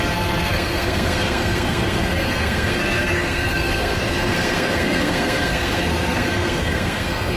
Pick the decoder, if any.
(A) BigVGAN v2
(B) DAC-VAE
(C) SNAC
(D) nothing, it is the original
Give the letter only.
C